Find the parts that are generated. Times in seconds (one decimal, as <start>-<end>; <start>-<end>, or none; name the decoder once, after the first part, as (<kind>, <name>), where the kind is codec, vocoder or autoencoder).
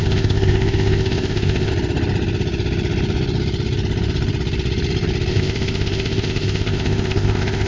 0.0-1.7 (codec, ZipCodec); 5.3-7.7